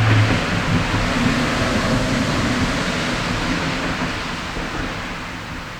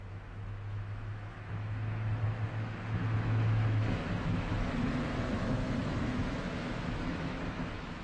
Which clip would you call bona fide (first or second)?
first